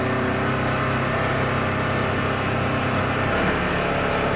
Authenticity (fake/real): real